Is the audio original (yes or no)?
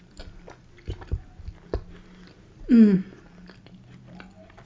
yes